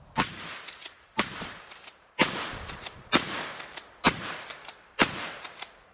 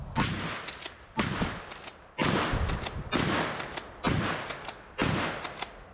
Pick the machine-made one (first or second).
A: first